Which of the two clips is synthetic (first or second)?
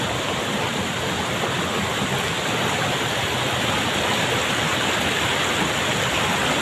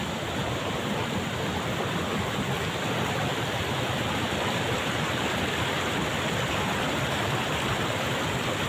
second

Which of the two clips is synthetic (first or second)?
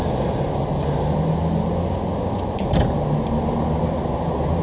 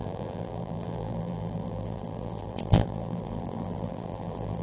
second